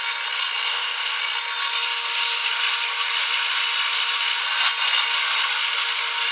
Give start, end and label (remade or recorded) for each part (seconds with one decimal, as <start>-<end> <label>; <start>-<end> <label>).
0.0-0.7 recorded; 0.7-1.2 remade; 1.2-6.3 recorded